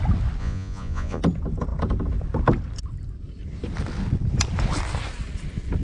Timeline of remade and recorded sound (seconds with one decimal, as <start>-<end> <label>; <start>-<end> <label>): 0.0-0.4 recorded; 0.4-1.2 remade; 1.2-5.8 recorded